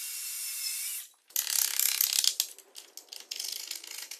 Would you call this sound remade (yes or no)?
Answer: no